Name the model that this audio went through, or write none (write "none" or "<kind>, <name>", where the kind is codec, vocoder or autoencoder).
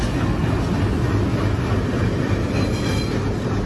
none